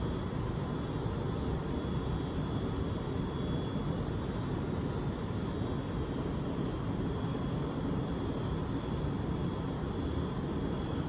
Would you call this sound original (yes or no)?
yes